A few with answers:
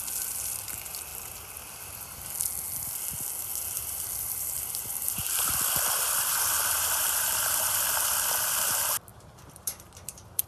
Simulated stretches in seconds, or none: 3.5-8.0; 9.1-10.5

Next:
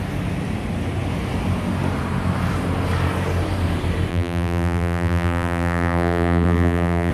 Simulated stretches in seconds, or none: 4.1-7.1

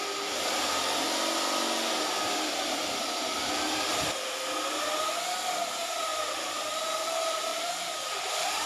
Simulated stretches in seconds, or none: 7.5-8.1

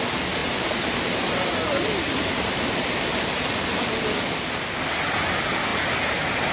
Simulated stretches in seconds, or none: 0.4-4.3

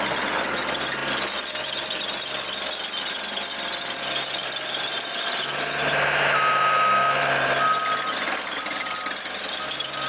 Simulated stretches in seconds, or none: none

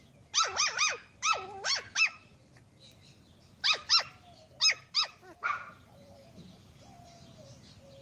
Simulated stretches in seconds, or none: 5.4-7.3

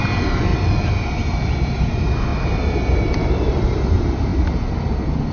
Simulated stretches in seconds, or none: 0.0-4.3

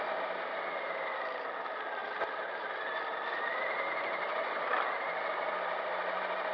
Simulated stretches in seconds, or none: none